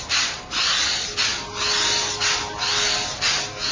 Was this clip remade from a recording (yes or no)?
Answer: no